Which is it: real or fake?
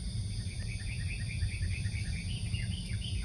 fake